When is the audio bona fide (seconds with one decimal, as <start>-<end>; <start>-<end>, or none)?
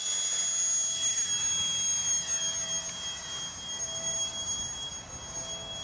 0.0-5.8